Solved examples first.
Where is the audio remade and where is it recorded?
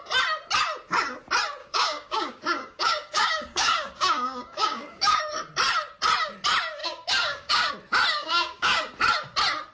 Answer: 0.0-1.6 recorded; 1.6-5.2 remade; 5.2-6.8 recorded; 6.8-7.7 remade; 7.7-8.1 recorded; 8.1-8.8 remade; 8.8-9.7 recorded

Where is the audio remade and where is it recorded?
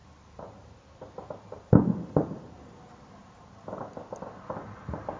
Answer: 0.0-5.2 recorded